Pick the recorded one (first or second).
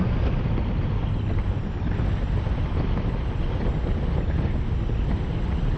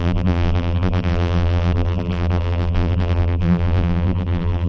first